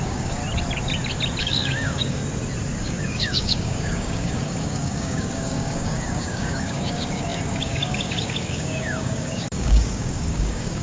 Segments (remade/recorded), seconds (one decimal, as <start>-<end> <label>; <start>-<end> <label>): 0.0-0.4 remade; 0.4-1.4 recorded; 1.4-2.2 remade; 2.2-2.8 recorded; 2.8-10.8 remade